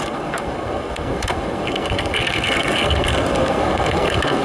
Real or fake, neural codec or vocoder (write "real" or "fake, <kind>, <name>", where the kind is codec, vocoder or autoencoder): fake, codec, SNAC